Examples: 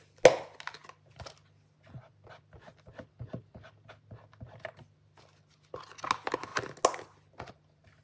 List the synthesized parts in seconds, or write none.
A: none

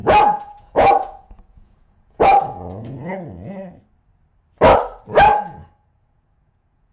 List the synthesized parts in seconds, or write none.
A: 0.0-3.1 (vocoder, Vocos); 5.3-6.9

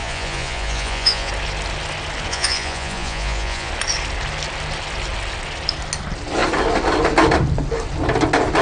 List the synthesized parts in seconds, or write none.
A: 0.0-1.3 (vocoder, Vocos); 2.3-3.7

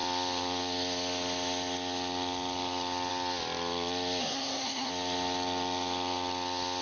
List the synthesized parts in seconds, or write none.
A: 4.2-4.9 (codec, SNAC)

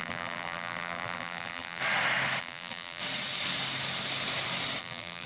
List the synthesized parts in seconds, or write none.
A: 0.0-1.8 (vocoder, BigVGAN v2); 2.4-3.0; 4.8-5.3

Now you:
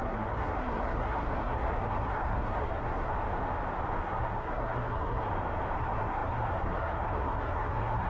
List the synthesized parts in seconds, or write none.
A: 0.0-3.1 (codec, SNAC); 4.0-5.3; 5.8-8.1

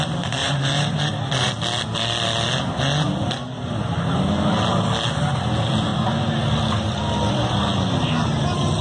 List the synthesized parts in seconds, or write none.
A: 0.4-1.6 (vocoder, BigVGAN v2)